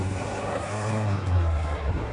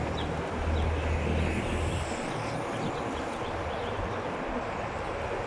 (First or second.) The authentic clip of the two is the second